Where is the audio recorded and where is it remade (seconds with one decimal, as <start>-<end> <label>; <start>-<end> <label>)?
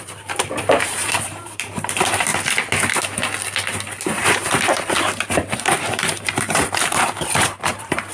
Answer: 0.0-2.3 remade; 2.3-4.2 recorded; 4.2-8.1 remade